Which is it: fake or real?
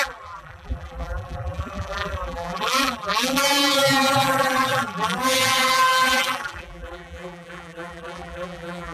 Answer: fake